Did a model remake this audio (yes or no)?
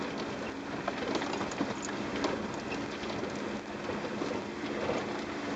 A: no